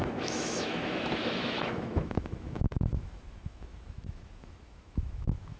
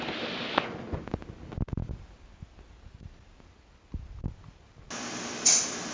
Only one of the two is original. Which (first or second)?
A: second